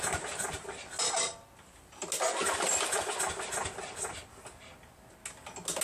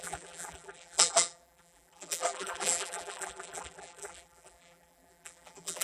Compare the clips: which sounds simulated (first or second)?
second